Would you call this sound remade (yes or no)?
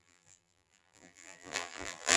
yes